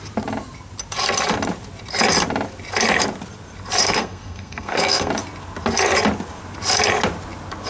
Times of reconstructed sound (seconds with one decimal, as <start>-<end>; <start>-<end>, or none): 3.8-5.1